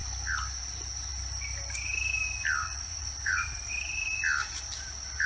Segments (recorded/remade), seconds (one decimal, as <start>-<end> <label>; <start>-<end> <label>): 0.0-2.6 recorded; 2.6-3.5 remade; 3.5-5.3 recorded